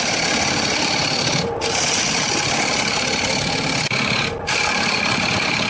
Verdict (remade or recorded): recorded